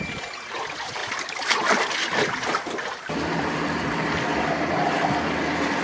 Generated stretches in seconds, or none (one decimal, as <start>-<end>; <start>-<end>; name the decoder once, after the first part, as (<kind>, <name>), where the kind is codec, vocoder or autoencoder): 1.0-4.5 (vocoder, BigVGAN v2)

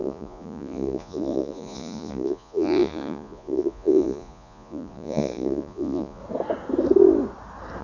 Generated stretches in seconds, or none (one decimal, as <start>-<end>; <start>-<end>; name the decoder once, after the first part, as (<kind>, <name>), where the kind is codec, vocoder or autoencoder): 0.0-6.2 (vocoder, Vocos)

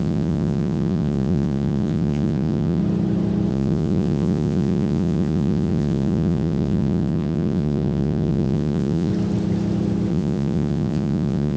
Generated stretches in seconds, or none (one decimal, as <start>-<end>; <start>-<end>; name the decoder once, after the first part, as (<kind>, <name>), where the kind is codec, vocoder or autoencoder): 0.0-2.8 (vocoder, Vocos); 3.5-9.1; 10.1-11.6

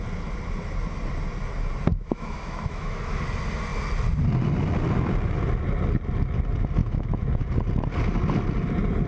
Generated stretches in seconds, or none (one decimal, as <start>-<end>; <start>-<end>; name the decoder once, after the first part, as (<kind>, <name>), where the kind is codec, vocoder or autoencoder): 1.9-3.1 (autoencoder, DAC-VAE); 6.8-7.4